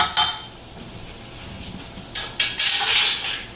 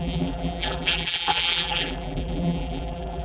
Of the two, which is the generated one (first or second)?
second